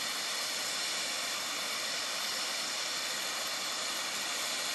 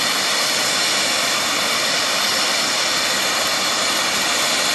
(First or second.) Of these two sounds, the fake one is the first